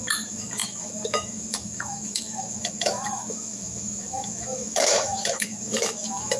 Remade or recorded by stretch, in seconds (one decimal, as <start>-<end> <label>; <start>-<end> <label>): 0.0-6.4 remade